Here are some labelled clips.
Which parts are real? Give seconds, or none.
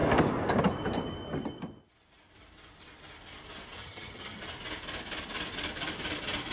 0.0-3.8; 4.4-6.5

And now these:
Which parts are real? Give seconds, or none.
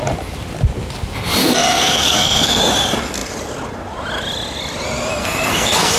0.0-1.4; 2.6-5.2